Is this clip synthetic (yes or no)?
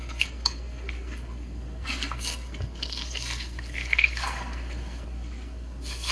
yes